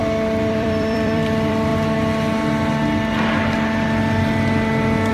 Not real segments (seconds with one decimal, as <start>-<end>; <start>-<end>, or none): 0.5-1.7